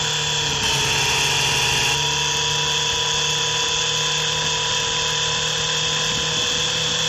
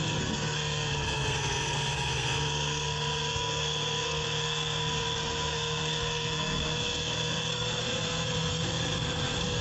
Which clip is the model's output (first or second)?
second